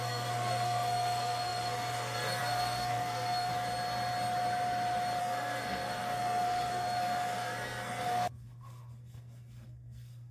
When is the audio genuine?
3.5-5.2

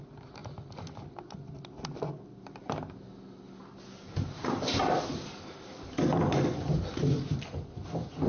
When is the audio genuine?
0.0-8.3

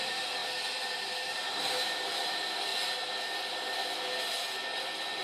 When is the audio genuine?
2.7-5.2

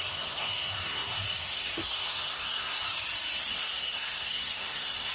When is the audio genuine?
2.8-3.5